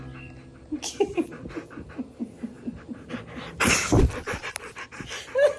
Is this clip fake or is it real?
real